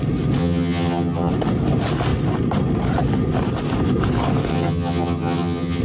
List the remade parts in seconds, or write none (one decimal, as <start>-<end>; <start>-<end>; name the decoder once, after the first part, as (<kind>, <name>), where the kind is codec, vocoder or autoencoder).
0.4-1.3 (vocoder, HiFi-GAN); 4.5-5.8